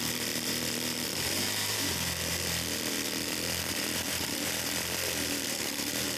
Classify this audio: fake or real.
fake